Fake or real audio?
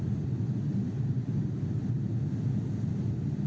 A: fake